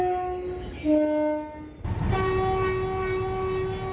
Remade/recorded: recorded